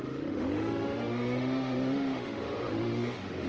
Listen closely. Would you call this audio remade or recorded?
remade